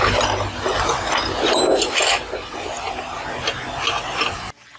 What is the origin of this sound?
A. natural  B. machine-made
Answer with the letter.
A